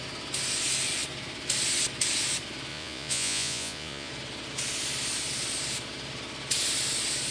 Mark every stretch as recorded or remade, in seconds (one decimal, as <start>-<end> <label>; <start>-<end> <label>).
0.0-2.7 recorded; 2.7-4.1 remade; 4.1-7.3 recorded